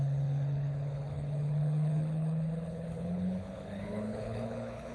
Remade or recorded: remade